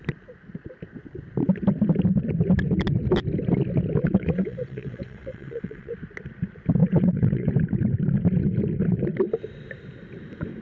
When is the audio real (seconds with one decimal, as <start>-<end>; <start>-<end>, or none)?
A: 0.0-4.0; 5.9-6.8; 7.5-10.6